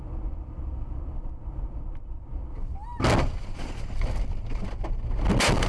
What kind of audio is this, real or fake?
real